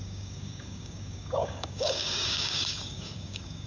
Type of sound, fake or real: fake